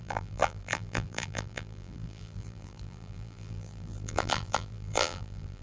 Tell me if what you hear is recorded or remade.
remade